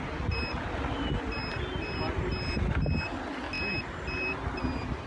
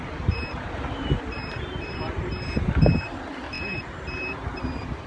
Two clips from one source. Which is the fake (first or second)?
second